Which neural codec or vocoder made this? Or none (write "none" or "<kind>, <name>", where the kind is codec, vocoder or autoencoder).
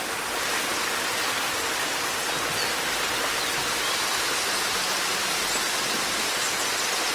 none